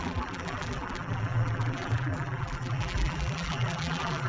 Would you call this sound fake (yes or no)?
yes